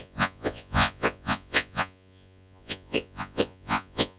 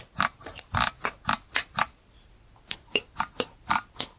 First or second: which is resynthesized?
first